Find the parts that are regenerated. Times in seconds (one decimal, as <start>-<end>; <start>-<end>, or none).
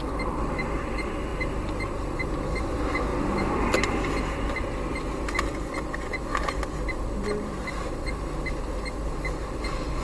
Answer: none